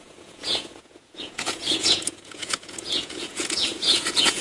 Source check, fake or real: fake